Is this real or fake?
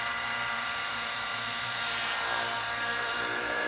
fake